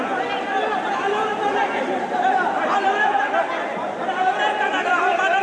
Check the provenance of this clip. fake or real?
real